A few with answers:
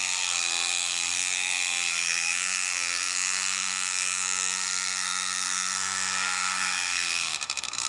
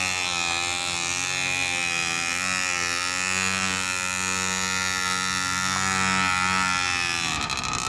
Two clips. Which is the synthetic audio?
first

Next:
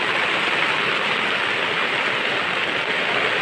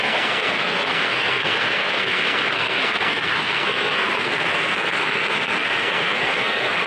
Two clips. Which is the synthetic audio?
second